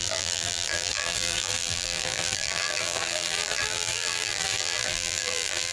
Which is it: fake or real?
fake